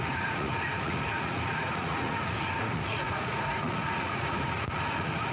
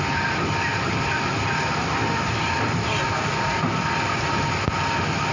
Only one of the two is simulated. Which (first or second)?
first